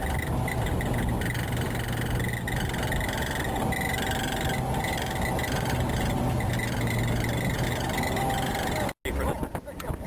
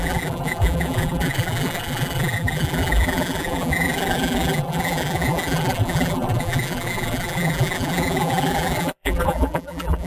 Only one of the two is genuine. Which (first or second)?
first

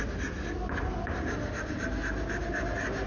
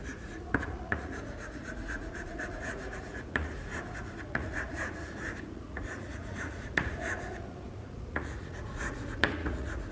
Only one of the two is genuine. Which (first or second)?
first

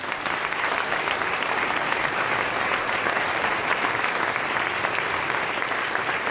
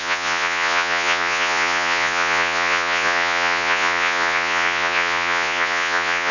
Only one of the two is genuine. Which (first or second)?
first